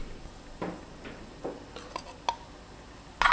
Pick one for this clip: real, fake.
real